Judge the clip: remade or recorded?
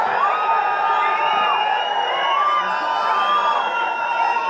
recorded